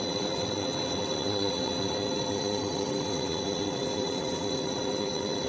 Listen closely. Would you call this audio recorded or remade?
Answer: remade